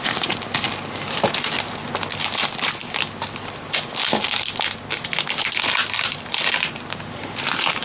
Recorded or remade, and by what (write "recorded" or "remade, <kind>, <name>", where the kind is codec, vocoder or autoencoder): recorded